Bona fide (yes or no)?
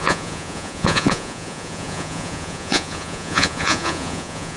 no